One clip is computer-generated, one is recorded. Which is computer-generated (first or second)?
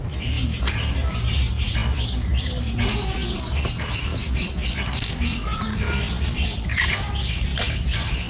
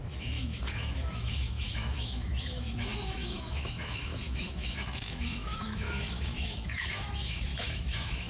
second